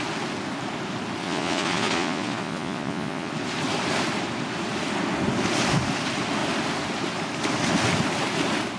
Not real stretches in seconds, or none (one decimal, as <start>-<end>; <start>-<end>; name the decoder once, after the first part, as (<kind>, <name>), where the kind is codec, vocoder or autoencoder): 1.2-3.3 (vocoder, Vocos)